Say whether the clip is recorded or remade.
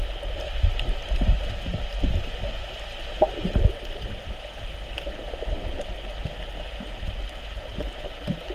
recorded